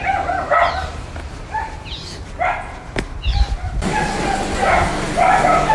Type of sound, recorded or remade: recorded